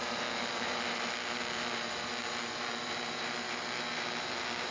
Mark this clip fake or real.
real